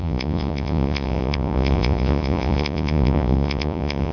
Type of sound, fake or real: fake